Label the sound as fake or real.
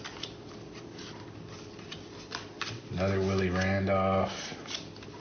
real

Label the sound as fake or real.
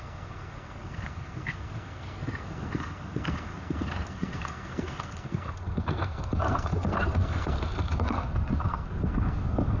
fake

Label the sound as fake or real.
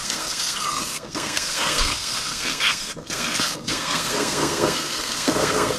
fake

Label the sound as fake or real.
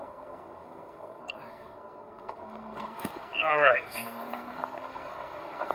fake